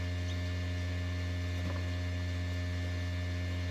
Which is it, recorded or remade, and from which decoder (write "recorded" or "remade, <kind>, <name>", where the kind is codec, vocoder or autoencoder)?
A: recorded